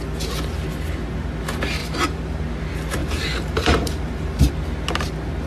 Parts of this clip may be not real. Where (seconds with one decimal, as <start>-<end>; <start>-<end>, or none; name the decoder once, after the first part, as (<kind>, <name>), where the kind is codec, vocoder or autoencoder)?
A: 1.8-2.4 (vocoder, BigVGAN v2); 3.0-4.5

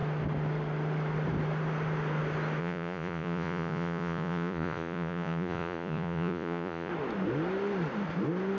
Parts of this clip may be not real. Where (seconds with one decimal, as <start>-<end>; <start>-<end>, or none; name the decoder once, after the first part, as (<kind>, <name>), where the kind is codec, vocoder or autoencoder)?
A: 2.6-6.9 (vocoder, Vocos)